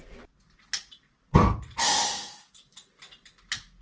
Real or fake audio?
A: real